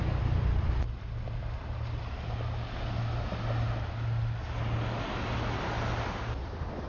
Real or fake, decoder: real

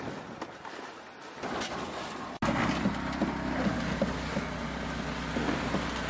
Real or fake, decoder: real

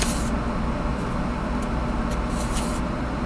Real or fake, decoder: real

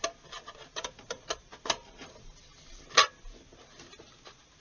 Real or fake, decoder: real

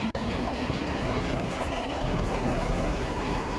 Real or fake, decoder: fake, codec, SNAC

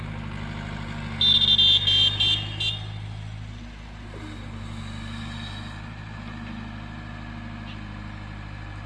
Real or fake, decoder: real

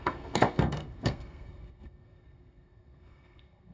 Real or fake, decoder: fake, codec, SNAC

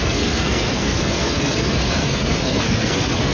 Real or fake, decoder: fake, codec, SNAC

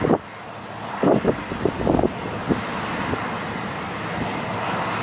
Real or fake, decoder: real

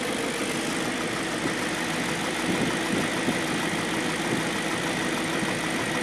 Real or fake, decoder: real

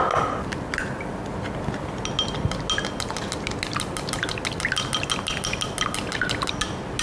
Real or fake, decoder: real